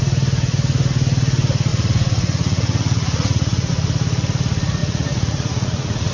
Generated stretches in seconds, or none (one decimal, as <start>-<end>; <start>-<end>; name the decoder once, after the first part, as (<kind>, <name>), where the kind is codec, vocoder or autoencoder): 1.7-3.7 (vocoder, Vocos); 4.8-6.1